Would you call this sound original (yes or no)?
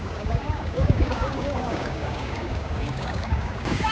no